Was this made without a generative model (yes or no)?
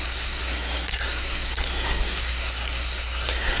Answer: no